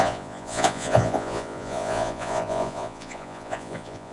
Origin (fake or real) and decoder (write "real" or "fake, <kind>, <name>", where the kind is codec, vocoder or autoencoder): fake, vocoder, Vocos